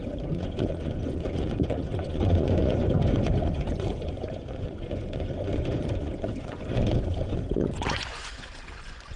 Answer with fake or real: fake